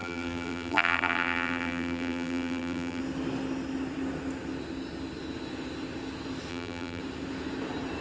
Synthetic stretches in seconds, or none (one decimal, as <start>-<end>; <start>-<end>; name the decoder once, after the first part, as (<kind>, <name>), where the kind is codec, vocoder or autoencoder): 0.0-3.0 (vocoder, BigVGAN v2); 6.5-7.0